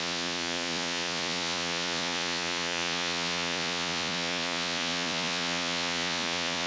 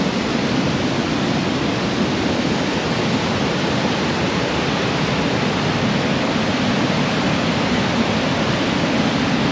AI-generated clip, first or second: first